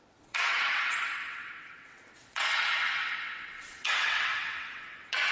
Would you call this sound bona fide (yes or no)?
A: no